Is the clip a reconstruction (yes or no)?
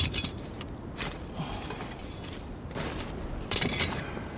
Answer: yes